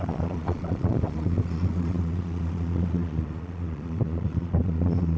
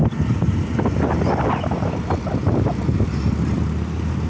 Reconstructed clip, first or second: first